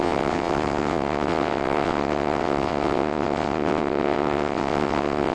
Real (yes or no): no